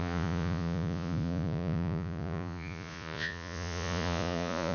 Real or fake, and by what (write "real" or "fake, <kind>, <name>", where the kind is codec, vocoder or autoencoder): fake, vocoder, Vocos